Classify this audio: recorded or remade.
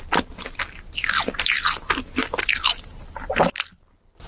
recorded